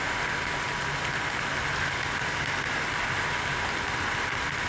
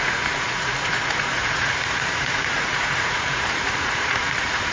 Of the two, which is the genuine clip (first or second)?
first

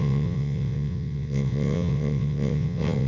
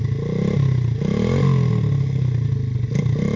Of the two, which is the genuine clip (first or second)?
second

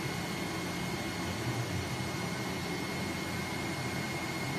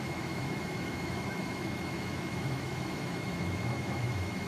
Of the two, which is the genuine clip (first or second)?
first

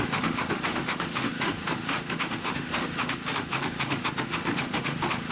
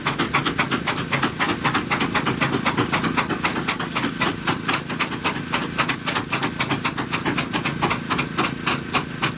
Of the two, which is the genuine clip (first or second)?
second